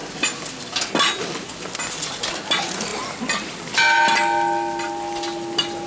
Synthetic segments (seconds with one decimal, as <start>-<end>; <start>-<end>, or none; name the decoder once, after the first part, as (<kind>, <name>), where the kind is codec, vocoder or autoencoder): none